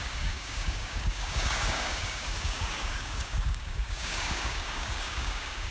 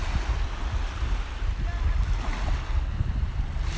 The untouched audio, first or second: second